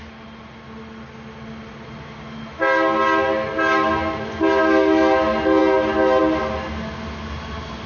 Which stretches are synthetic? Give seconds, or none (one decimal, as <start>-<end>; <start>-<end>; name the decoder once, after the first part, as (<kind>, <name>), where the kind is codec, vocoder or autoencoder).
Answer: none